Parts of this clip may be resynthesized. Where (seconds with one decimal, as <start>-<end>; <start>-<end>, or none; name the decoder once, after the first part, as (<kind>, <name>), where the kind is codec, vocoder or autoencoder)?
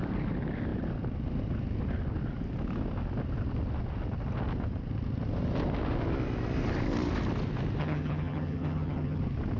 7.8-9.2 (vocoder, HiFi-GAN)